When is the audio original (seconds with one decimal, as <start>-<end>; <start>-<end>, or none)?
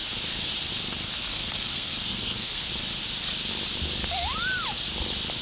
0.0-1.3; 2.7-5.4